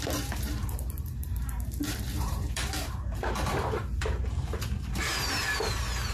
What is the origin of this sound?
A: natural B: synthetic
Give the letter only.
B